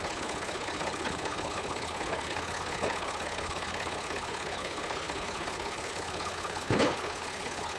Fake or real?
fake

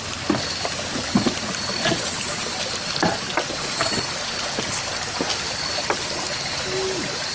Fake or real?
real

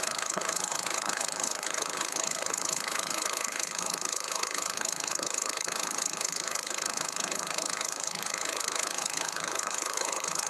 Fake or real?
fake